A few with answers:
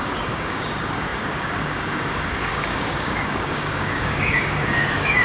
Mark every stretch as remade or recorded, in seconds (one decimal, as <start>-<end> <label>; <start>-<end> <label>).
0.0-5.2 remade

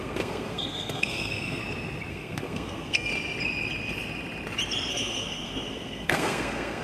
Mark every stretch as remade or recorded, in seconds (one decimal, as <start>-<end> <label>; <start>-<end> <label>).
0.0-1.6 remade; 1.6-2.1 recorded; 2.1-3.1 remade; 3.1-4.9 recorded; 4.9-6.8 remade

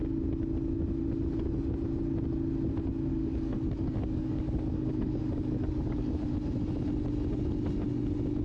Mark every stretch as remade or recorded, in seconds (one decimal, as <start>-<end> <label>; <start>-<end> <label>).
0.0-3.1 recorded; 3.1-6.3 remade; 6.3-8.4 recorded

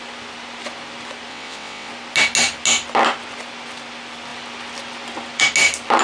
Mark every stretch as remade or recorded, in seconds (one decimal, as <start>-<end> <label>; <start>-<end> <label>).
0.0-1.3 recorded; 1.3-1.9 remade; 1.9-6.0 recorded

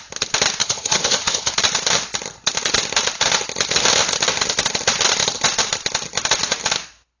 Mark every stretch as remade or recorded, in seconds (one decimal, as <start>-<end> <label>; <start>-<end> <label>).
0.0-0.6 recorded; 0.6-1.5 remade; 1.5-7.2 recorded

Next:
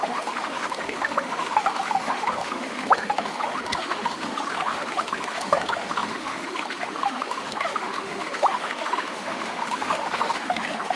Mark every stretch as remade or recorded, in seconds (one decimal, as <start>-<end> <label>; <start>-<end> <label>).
0.0-11.0 remade

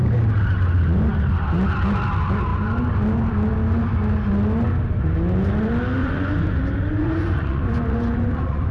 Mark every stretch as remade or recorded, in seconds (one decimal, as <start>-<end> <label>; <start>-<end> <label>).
0.0-6.0 recorded; 6.0-6.6 remade; 6.6-7.0 recorded; 7.0-8.7 remade

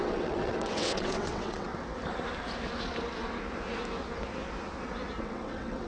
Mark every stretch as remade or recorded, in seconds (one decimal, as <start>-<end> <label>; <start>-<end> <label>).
0.0-1.7 remade; 1.7-5.2 recorded; 5.2-5.9 remade